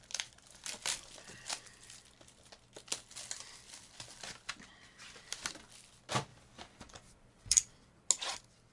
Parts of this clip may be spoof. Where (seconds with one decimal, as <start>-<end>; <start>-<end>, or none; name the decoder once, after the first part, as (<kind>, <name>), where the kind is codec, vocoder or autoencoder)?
0.8-1.5 (vocoder, BigVGAN v2); 3.8-4.5; 6.3-8.1